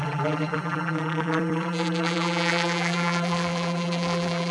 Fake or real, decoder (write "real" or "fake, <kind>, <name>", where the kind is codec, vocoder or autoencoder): fake, vocoder, BigVGAN v2